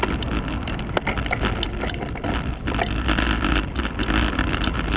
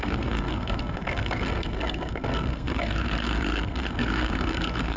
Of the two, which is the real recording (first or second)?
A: first